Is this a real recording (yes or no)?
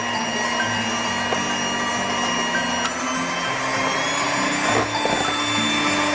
yes